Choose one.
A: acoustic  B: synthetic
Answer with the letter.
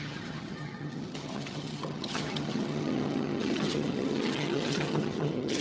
B